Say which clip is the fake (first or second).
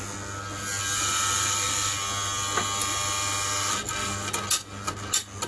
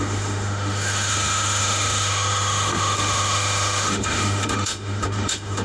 second